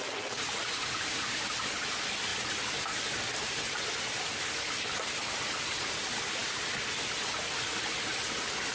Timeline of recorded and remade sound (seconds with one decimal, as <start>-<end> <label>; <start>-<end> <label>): 0.0-8.7 recorded